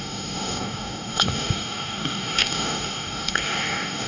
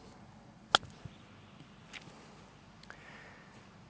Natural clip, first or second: second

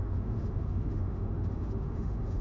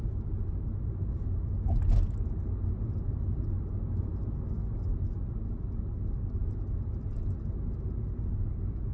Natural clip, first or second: second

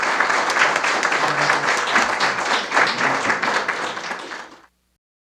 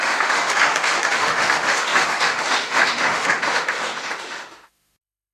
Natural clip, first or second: first